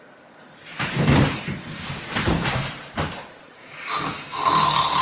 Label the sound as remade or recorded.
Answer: remade